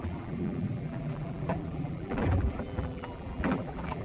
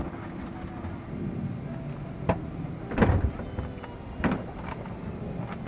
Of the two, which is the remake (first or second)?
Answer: first